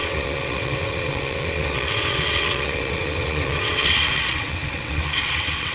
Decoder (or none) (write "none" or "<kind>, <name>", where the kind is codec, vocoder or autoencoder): vocoder, WaveNeXt